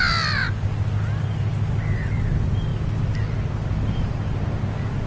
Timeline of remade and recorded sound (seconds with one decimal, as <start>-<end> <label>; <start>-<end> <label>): 0.0-5.1 recorded